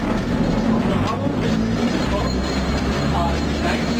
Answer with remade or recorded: recorded